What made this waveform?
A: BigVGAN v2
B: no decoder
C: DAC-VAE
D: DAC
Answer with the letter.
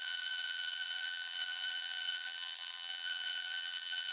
A